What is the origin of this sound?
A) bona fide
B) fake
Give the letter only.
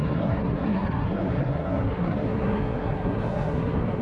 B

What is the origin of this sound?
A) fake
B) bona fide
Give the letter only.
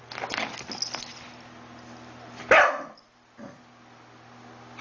B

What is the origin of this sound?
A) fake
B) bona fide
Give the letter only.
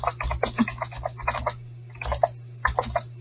B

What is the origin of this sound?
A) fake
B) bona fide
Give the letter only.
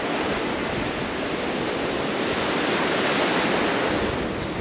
B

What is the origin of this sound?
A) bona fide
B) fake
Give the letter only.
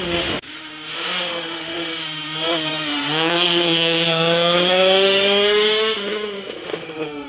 B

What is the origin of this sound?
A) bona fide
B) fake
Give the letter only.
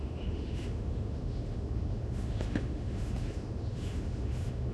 B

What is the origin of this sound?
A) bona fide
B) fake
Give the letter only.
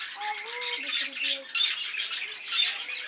A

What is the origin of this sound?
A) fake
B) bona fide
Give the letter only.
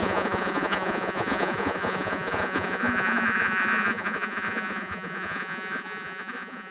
A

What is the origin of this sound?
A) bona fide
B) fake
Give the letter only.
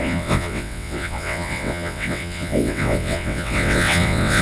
B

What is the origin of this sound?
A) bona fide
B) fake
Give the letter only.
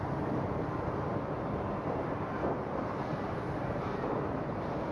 B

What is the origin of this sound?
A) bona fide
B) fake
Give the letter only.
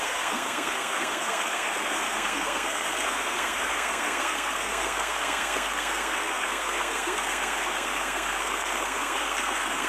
B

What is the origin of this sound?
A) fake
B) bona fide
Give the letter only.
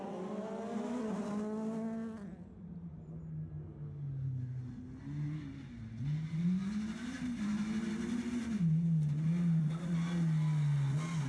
B